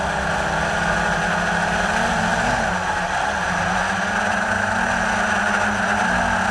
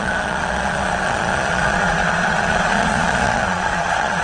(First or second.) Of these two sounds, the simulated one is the second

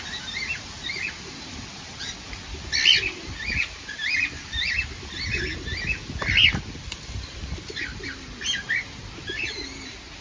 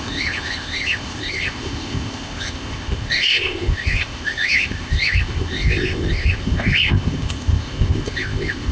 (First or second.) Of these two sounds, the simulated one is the second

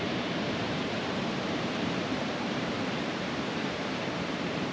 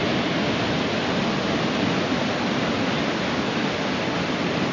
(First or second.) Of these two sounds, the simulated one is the first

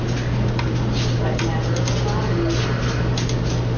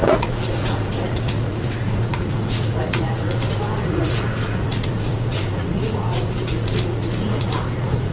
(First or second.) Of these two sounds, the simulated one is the second